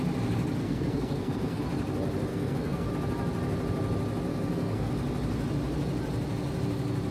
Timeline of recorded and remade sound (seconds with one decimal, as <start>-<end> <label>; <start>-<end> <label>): 0.0-0.6 recorded; 0.6-1.6 remade; 1.6-2.3 recorded; 2.3-2.9 remade; 2.9-4.3 recorded; 4.3-4.9 remade; 4.9-7.1 recorded